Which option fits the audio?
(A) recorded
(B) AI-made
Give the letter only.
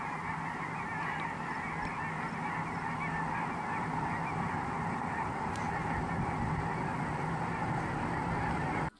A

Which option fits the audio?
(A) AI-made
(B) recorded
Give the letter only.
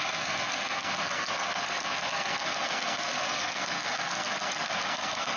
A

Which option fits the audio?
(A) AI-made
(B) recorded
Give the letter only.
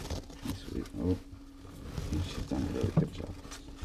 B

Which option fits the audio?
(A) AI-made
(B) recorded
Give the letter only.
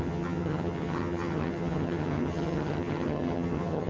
A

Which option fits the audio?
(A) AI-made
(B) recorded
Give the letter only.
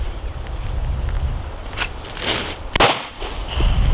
B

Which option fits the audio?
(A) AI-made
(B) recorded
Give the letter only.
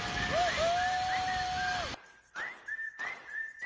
B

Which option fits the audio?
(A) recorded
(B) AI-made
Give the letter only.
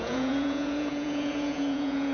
B